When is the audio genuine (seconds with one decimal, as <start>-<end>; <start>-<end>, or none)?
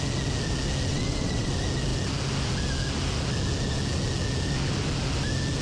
0.0-0.9; 1.5-5.6